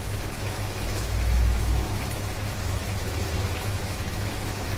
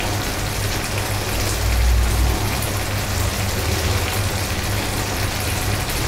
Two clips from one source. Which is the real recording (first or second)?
second